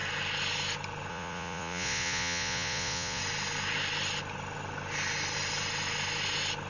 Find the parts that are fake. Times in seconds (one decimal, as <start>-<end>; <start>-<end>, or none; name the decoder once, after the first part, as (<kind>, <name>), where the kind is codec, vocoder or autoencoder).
1.1-3.2 (vocoder, Vocos)